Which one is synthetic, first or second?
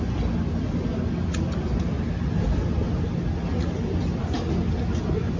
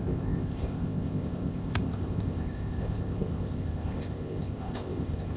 second